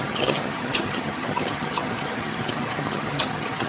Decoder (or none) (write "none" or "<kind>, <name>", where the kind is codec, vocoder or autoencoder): vocoder, HiFi-GAN